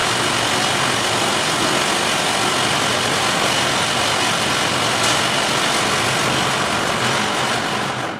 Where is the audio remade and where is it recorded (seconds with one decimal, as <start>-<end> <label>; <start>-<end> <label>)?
0.0-8.2 recorded